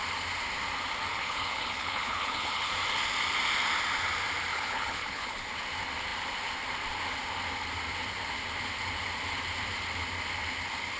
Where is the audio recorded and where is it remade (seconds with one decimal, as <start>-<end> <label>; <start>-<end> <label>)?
0.0-1.1 recorded; 1.1-2.7 remade; 2.7-4.5 recorded; 4.5-5.5 remade; 5.5-11.0 recorded